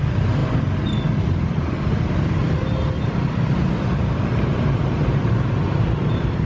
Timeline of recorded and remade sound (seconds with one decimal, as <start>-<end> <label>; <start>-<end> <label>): 0.0-0.4 remade; 0.4-1.2 recorded; 1.2-2.4 remade; 2.4-3.1 recorded; 3.1-6.5 remade